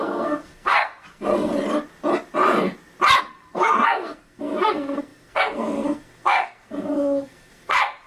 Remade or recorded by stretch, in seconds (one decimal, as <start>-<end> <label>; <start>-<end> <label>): 0.0-1.5 remade; 1.5-3.2 recorded; 3.2-8.1 remade